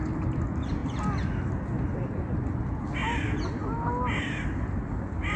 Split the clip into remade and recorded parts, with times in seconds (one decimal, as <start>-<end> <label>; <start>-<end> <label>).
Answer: 0.0-5.4 recorded